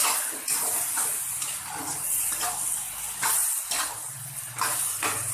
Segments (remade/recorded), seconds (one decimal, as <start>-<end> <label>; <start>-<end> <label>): 0.0-5.3 recorded